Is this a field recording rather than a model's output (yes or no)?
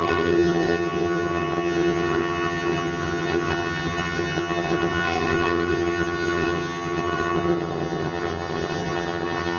no